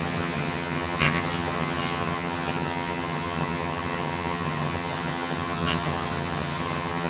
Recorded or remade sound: remade